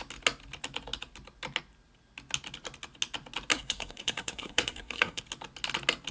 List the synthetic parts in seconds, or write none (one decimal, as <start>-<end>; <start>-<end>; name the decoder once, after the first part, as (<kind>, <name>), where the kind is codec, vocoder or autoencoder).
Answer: 3.5-5.2 (codec, SNAC)